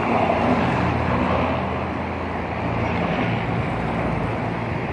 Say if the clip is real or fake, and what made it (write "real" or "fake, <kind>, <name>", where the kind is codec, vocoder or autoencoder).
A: real